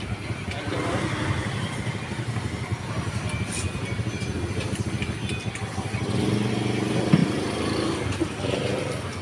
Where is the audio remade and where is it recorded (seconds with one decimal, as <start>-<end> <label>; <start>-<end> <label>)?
0.0-7.2 recorded; 7.2-8.4 remade; 8.4-9.2 recorded